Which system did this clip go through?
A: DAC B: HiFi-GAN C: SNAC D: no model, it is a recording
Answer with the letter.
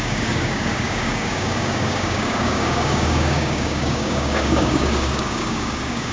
A